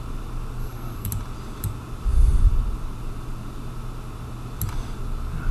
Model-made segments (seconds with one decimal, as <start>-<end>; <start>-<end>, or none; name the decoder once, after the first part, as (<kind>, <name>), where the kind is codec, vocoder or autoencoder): 0.6-1.1 (codec, SNAC)